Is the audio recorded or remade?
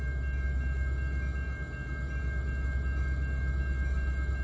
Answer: recorded